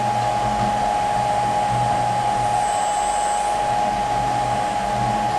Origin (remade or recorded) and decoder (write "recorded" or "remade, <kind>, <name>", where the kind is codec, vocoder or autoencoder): recorded